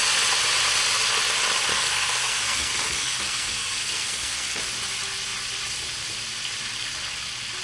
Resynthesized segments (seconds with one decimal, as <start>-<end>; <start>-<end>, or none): 1.7-4.6